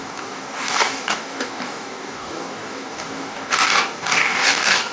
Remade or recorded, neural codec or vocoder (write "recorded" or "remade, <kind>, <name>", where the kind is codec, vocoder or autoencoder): remade, codec, DAC